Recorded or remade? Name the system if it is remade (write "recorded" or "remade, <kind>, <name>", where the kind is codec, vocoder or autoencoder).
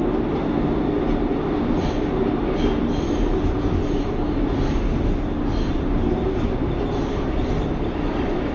recorded